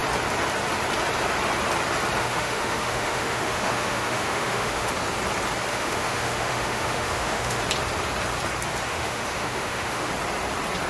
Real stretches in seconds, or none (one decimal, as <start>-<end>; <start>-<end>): 0.0-2.2; 4.9-5.7; 7.6-8.9; 10.1-10.9